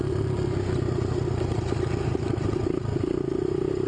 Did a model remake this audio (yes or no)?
no